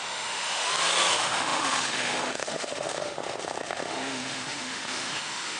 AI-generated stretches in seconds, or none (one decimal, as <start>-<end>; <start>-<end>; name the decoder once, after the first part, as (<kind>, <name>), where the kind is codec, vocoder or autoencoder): 0.0-0.6 (autoencoder, DAC-VAE); 1.1-5.6